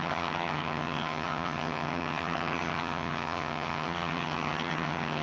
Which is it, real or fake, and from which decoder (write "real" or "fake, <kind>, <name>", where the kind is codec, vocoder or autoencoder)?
fake, vocoder, HiFi-GAN